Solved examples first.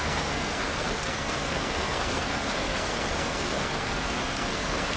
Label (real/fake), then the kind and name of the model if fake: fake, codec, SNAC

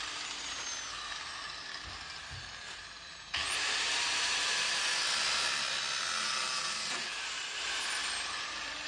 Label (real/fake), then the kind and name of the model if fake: real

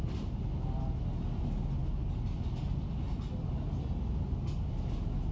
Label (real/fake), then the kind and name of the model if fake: real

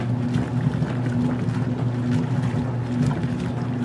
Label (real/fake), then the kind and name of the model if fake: real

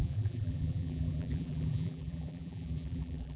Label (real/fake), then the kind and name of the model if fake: fake, vocoder, BigVGAN v2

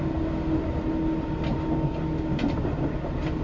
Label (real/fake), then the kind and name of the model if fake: real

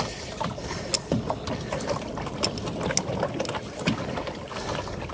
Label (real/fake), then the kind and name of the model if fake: real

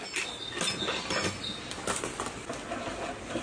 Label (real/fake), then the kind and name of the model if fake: real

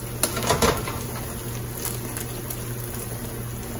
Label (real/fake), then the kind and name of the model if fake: real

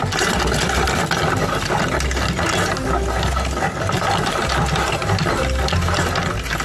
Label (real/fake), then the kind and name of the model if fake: real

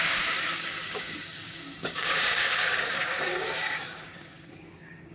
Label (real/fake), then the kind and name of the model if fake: fake, codec, DAC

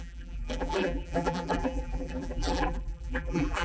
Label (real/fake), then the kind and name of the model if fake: fake, vocoder, BigVGAN v2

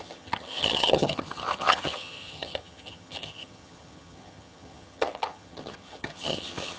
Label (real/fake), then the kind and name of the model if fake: fake, vocoder, HiFi-GAN